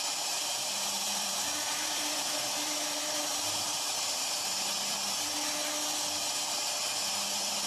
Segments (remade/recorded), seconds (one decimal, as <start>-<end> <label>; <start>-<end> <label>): 0.0-4.6 remade; 4.6-7.7 recorded